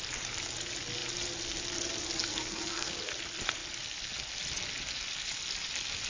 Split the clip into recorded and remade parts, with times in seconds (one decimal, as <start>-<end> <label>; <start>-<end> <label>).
0.0-2.3 recorded; 2.3-2.9 remade; 2.9-6.1 recorded